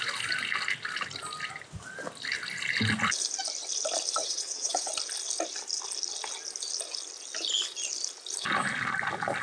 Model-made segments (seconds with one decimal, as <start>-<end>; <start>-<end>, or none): 4.2-4.9